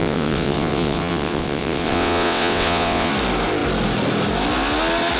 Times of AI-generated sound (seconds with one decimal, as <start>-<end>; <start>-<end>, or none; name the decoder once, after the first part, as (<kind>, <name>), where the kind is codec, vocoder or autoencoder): 0.0-3.1 (vocoder, WaveNeXt)